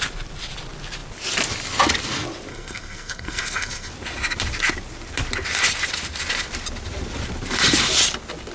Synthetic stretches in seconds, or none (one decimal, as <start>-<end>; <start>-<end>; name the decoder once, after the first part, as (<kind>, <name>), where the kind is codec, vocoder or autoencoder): 2.5-3.9 (codec, SNAC)